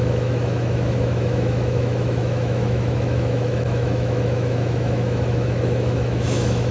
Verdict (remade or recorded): remade